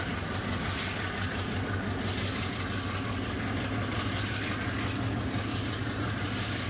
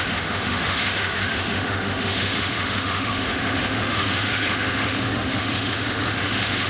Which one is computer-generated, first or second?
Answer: second